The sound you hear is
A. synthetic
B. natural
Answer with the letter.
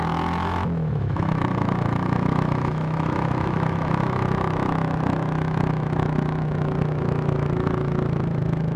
A